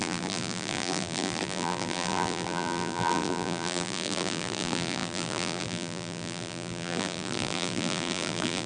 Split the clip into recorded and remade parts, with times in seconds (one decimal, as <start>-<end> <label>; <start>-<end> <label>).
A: 0.0-8.7 remade